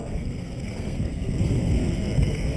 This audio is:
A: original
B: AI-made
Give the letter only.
B